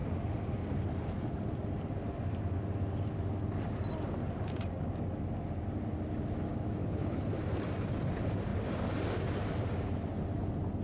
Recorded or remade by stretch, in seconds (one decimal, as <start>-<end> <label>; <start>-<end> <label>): 0.0-6.8 recorded; 6.8-7.3 remade; 7.3-10.8 recorded